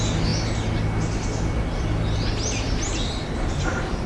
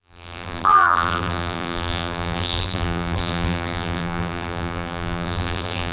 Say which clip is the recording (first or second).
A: first